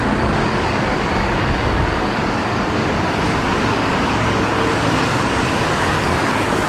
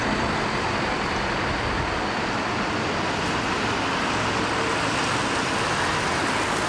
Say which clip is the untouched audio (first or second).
second